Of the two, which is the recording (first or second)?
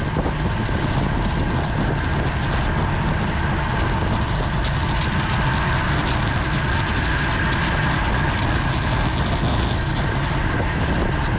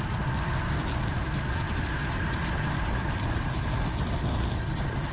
first